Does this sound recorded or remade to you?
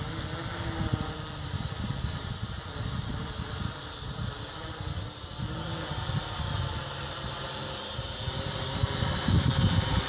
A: recorded